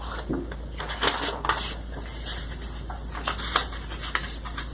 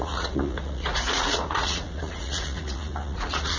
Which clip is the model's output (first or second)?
second